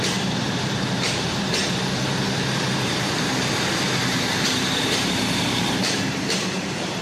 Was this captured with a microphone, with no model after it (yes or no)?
no